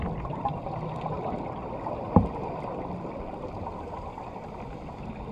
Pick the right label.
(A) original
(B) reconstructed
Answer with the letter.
A